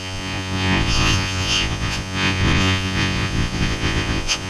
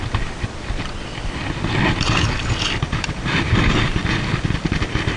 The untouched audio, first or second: second